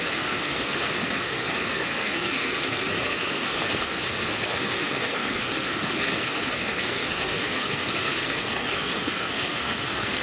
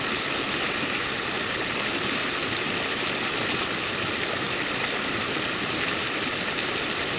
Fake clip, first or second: first